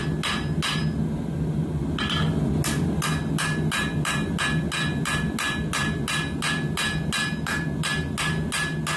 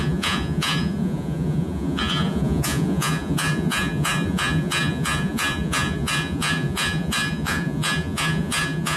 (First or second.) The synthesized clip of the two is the second